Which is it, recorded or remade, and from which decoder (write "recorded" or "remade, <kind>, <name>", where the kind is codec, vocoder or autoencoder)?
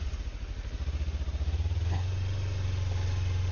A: recorded